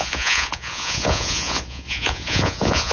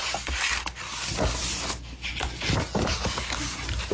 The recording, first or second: second